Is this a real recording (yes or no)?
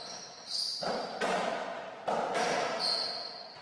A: yes